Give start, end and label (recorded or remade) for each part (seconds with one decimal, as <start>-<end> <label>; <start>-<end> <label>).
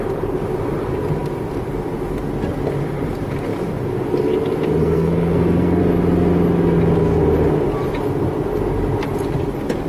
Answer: 0.0-4.8 recorded; 4.8-5.8 remade; 5.8-9.9 recorded